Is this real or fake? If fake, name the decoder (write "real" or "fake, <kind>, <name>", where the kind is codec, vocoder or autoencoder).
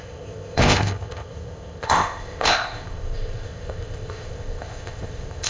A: fake, codec, ZipCodec